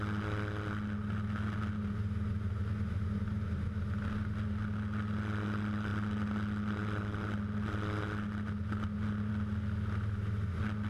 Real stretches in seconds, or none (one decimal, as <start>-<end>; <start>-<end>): 0.0-10.9